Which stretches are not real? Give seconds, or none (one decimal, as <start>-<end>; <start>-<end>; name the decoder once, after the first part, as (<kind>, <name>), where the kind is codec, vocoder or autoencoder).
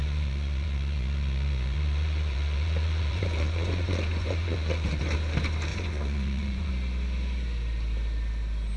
0.0-5.0 (vocoder, Vocos); 5.7-6.7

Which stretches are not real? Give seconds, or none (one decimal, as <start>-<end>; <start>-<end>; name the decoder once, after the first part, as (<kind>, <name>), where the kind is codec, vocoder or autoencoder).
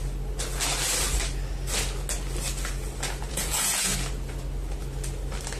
3.3-3.9 (vocoder, Vocos)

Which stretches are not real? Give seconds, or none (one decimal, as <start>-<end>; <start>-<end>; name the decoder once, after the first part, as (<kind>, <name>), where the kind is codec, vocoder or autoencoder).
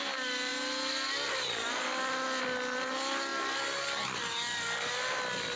none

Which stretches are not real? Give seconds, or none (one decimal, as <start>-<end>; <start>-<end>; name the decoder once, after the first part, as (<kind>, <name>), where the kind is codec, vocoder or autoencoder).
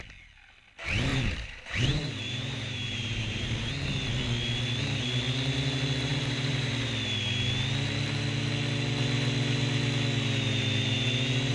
1.1-3.7 (vocoder, BigVGAN v2); 6.1-6.9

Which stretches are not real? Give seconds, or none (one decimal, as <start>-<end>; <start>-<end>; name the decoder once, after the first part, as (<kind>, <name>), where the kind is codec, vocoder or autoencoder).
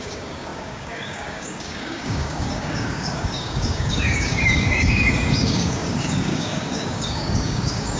0.0-8.0 (codec, DAC)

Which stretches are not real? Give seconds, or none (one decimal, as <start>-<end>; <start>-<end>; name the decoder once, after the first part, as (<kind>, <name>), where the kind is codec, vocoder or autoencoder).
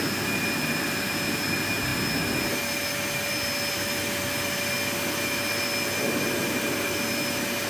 none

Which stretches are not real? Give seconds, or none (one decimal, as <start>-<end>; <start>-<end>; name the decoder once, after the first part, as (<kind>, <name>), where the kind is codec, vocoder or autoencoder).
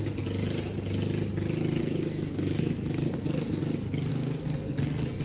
1.8-3.6 (codec, SNAC); 4.1-5.2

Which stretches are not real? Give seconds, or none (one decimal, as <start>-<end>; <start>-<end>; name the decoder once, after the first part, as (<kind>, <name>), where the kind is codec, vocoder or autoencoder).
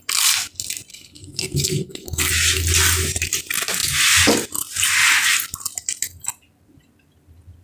0.9-2.3 (codec, SNAC)